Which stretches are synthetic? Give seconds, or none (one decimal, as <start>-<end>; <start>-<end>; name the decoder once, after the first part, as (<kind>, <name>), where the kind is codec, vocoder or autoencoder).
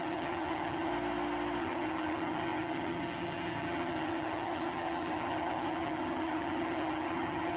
0.0-0.9 (vocoder, HiFi-GAN); 1.6-7.6